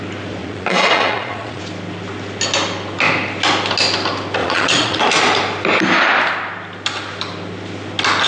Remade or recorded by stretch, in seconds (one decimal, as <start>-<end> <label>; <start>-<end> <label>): 0.0-0.4 recorded; 0.4-1.6 remade; 1.6-4.4 recorded; 4.4-5.0 remade; 5.0-8.3 recorded